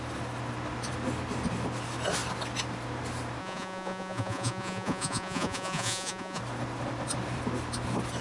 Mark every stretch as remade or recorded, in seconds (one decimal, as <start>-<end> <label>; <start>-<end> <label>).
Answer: 0.0-3.4 recorded; 3.4-6.4 remade; 6.4-8.2 recorded